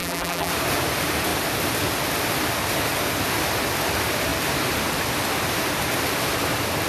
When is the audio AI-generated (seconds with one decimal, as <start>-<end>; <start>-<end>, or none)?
0.0-0.5